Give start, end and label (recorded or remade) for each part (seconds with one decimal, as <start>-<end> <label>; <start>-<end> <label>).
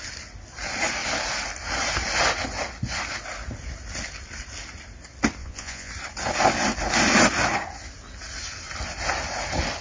0.0-5.4 recorded; 5.4-5.9 remade; 5.9-9.8 recorded